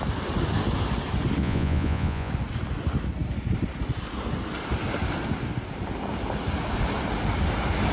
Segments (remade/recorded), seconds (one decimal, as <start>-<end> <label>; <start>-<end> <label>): 0.0-1.4 recorded; 1.4-2.3 remade; 2.3-7.9 recorded